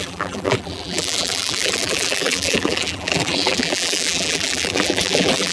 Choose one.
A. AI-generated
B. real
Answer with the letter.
A